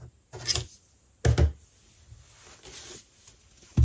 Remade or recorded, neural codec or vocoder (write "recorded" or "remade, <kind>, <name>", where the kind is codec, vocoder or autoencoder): recorded